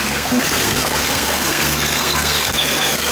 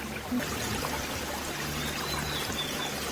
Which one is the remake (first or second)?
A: first